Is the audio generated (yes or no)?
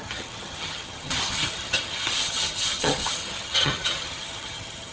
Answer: yes